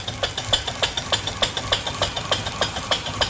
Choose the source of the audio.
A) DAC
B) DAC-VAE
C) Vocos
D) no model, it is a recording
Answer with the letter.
D